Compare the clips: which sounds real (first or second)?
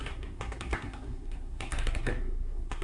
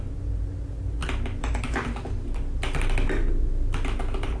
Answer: second